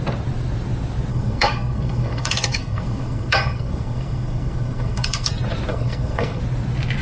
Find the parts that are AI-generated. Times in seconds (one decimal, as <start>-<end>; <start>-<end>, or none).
1.1-5.3; 5.7-6.4